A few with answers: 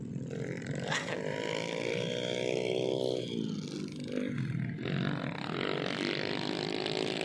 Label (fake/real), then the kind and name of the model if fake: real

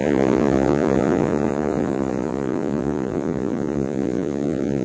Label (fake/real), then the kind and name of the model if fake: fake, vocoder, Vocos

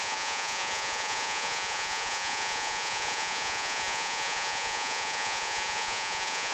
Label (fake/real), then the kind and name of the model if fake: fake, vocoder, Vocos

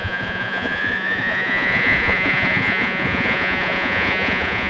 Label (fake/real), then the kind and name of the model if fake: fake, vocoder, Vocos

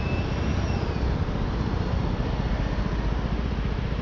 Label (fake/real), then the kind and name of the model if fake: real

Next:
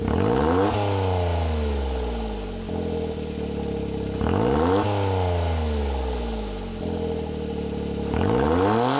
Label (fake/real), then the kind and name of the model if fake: real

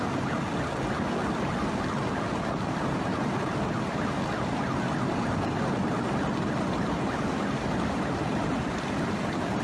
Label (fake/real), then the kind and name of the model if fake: real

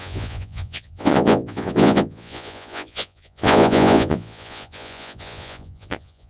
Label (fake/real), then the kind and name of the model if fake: fake, vocoder, Vocos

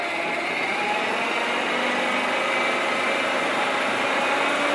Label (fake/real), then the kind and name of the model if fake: real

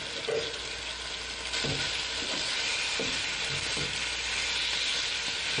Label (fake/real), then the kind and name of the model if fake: real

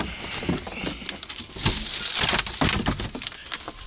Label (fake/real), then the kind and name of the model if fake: real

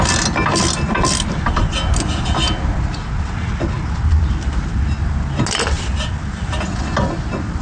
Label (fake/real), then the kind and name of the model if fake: real